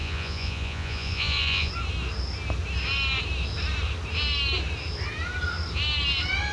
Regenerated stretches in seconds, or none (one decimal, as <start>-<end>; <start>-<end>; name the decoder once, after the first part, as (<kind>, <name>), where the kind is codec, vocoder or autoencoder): 0.0-1.7 (vocoder, Vocos)